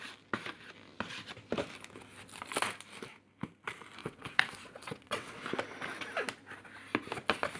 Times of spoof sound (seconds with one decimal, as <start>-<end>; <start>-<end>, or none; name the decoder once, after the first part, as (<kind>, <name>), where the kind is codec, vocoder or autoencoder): 4.0-5.4 (vocoder, WaveNeXt)